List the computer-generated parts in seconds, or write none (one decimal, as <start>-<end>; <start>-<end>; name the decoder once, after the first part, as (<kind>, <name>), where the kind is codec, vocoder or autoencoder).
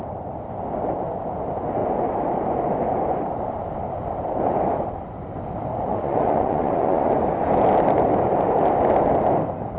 5.9-7.1 (vocoder, Vocos)